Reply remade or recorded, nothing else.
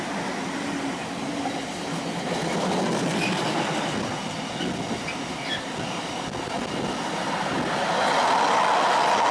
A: recorded